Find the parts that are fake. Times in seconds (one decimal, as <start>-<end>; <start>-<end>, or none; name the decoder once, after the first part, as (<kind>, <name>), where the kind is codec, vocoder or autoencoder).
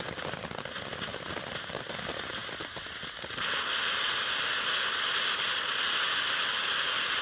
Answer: none